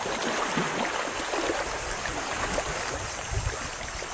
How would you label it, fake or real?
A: real